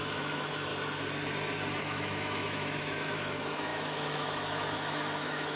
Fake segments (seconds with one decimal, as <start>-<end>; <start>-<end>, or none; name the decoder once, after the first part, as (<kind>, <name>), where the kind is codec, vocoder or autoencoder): 0.0-0.7 (autoencoder, DAC-VAE); 1.8-5.6